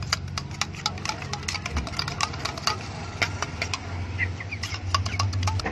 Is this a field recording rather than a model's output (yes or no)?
yes